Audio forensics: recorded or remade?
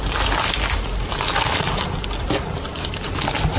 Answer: recorded